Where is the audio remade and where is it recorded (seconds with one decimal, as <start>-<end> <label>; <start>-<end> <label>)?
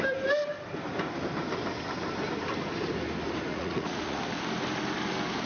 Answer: 0.0-3.5 recorded; 3.5-4.2 remade; 4.2-5.5 recorded